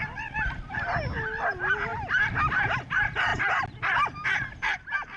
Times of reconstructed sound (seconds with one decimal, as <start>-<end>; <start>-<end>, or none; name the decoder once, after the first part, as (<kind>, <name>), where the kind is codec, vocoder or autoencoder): none